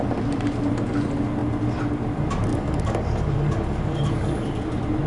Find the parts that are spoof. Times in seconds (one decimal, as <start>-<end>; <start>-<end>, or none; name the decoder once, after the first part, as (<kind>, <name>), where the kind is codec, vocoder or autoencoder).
2.5-4.6 (codec, DAC)